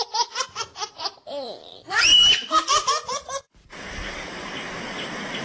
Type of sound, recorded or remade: remade